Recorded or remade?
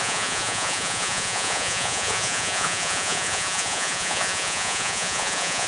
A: remade